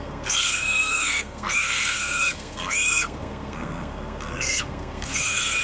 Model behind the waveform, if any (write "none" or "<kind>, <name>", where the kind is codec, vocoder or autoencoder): codec, SNAC